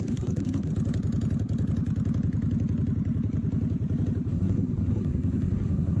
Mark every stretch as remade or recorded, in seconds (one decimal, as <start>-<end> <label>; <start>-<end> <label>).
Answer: 0.0-0.7 remade; 0.7-4.3 recorded; 4.3-6.0 remade